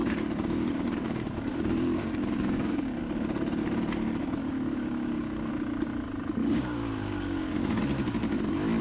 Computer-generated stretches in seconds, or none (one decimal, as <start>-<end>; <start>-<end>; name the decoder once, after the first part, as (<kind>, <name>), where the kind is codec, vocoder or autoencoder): 0.0-3.0 (codec, DAC); 4.4-5.5; 6.4-7.8